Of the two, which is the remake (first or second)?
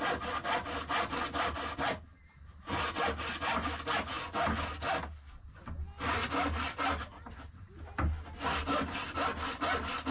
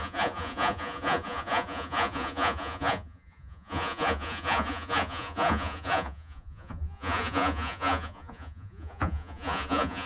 second